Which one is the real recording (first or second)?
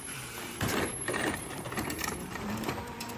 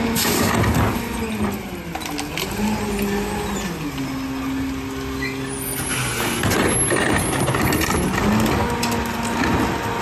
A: second